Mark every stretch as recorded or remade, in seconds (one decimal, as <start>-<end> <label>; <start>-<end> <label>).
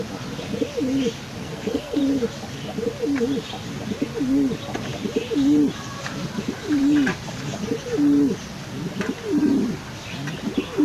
0.0-1.4 recorded; 1.4-2.0 remade; 2.0-10.8 recorded